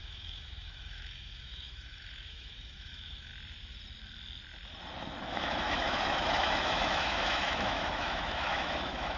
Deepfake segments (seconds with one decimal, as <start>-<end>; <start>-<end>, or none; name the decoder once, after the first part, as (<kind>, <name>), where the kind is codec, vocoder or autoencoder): 0.0-3.3 (autoencoder, DAC-VAE); 5.3-9.2